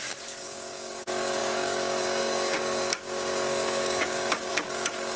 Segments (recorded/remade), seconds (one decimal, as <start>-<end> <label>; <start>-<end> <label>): 0.0-5.2 remade